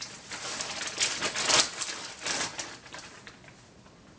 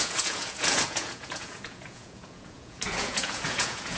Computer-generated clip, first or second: second